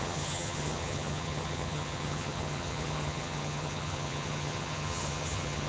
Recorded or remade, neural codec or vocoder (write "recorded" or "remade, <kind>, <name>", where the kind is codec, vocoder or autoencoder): remade, vocoder, HiFi-GAN